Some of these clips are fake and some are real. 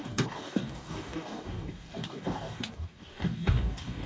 fake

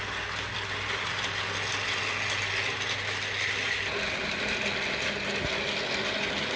real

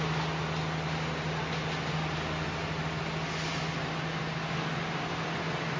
real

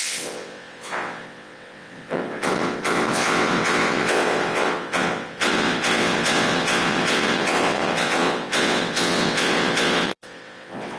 fake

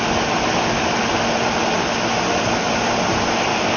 real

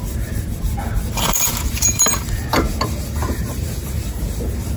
fake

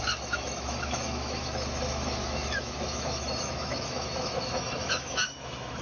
fake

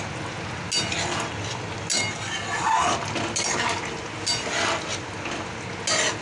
real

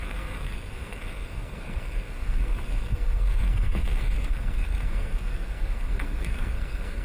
fake